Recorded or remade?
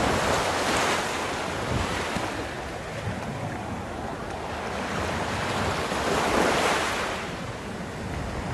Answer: recorded